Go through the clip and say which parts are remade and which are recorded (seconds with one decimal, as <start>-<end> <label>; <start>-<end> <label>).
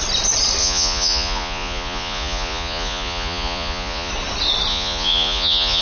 0.0-0.6 recorded; 0.6-4.1 remade; 4.1-4.7 recorded; 4.7-5.8 remade